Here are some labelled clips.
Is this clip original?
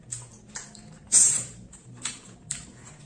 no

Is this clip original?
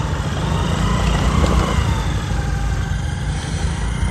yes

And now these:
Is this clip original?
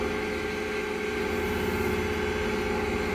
yes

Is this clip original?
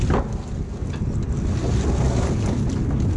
yes